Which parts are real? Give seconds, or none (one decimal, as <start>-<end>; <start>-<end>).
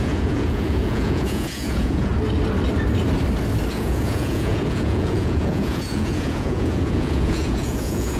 2.1-3.7